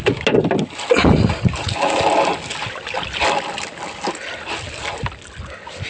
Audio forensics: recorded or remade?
recorded